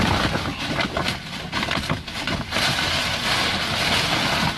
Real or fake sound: real